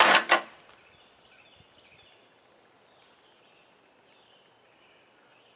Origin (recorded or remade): recorded